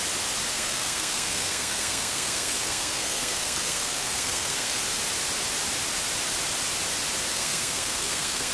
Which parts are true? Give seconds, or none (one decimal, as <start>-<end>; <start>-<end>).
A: 0.0-0.5; 4.8-7.3